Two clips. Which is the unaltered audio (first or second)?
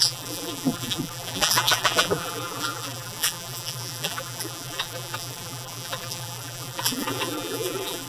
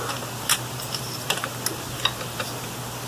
second